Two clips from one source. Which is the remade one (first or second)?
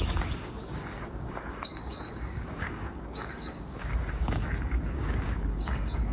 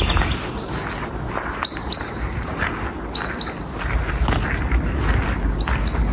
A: first